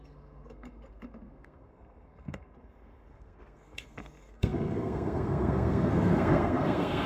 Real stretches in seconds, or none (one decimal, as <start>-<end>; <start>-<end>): none

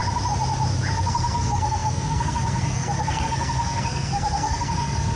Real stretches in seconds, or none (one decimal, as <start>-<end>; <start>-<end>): 0.0-1.0

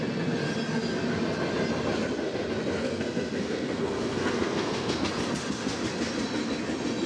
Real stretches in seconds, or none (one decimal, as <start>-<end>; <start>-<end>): 0.0-2.8; 5.1-7.1

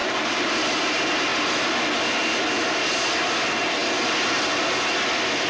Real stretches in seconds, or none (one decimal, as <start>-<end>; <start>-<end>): 0.5-5.5

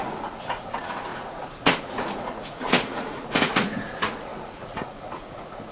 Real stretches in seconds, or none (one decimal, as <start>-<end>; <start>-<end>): none

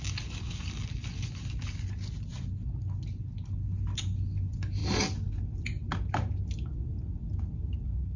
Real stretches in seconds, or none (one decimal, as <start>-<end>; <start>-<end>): 0.0-8.2